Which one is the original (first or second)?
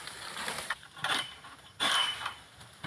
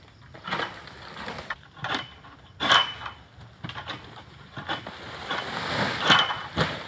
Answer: second